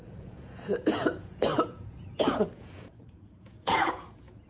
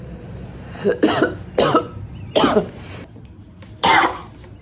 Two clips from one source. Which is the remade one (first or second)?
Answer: first